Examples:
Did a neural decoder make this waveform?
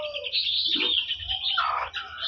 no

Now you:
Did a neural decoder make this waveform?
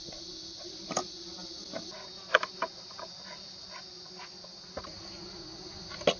no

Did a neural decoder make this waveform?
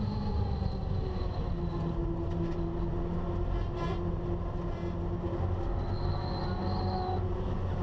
no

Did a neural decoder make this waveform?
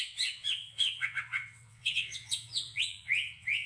yes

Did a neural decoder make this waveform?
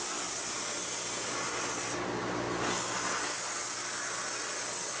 no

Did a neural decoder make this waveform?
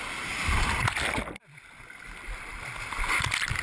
no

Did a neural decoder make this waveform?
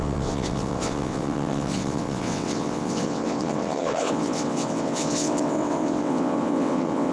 yes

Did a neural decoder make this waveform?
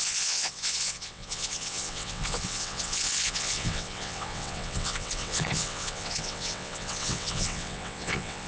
yes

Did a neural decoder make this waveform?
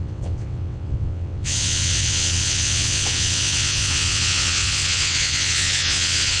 yes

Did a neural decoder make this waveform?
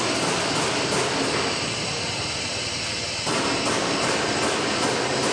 no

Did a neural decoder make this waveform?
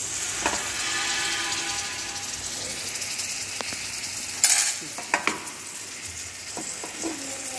no